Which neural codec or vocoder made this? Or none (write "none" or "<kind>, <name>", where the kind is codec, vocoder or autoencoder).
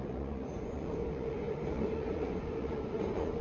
vocoder, Vocos